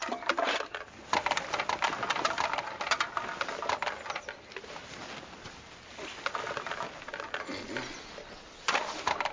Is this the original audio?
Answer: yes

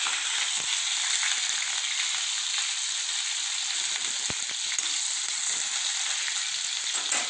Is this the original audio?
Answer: yes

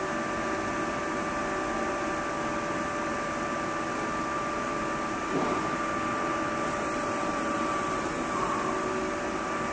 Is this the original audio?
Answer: no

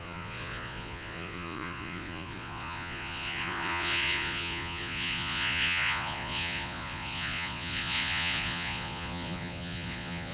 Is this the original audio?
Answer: no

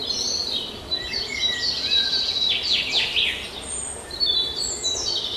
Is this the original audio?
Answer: yes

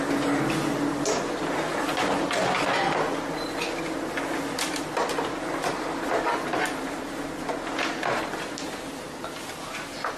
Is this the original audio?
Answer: yes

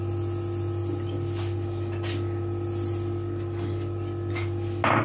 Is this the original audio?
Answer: yes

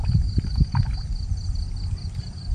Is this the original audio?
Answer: yes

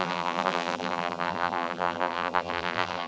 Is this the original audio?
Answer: no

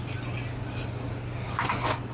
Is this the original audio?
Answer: yes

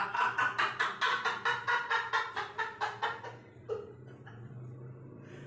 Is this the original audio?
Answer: yes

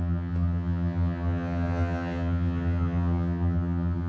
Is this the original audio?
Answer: no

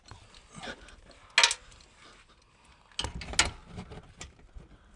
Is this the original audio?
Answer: yes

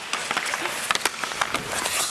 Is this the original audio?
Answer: yes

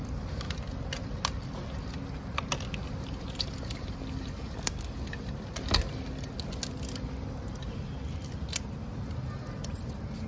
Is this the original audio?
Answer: yes